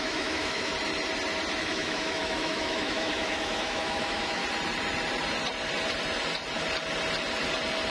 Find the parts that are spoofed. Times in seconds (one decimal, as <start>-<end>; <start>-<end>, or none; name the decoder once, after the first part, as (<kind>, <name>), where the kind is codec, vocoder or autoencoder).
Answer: 0.0-0.7 (autoencoder, DAC-VAE); 1.6-4.4